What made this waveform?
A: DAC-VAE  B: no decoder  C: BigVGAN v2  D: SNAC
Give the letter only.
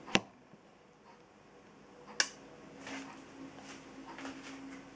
B